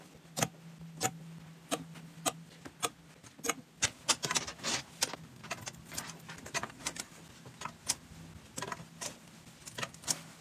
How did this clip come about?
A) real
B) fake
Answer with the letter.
A